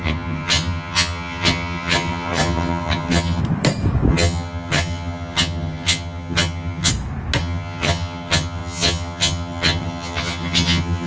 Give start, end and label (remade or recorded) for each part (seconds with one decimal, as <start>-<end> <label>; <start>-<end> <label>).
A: 0.0-3.4 remade; 3.4-4.1 recorded; 4.1-6.9 remade; 6.9-7.4 recorded; 7.4-11.1 remade